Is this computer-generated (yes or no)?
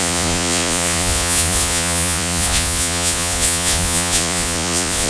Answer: yes